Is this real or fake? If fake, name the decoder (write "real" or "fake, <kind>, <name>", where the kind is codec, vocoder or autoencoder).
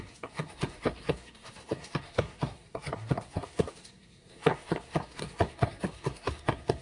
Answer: fake, codec, SNAC